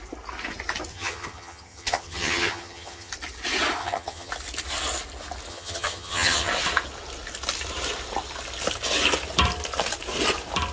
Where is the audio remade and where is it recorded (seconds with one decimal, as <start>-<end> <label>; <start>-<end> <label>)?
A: 0.0-0.9 recorded; 0.9-3.1 remade; 3.1-3.8 recorded; 3.8-4.3 remade; 4.3-5.5 recorded; 5.5-6.5 remade; 6.5-10.7 recorded